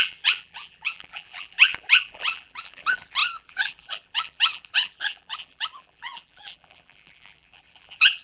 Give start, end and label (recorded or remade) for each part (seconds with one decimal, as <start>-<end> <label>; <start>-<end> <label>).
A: 0.0-8.2 remade